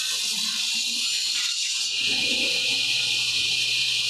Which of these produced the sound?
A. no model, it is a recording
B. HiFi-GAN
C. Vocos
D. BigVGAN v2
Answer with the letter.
D